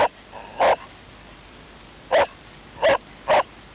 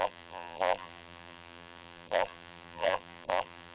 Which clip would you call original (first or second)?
first